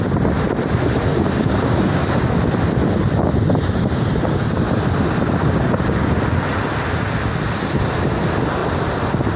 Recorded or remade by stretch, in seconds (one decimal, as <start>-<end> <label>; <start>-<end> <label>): 0.0-1.1 recorded; 1.1-2.4 remade; 2.4-9.4 recorded